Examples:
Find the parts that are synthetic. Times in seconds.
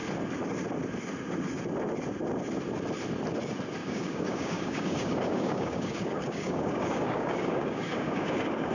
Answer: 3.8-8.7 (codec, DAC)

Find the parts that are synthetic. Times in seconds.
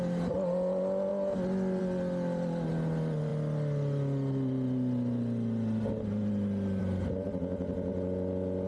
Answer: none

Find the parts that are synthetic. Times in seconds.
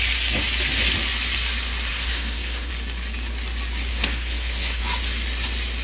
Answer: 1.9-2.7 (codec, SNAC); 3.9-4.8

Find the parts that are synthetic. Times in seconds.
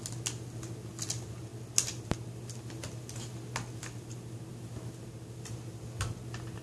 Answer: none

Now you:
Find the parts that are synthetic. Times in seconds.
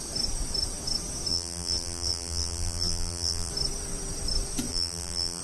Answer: 1.3-3.5 (vocoder, BigVGAN v2); 4.7-5.4